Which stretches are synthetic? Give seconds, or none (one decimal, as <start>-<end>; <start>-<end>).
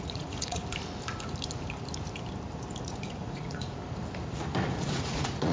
0.0-0.6; 2.8-3.8; 4.7-5.5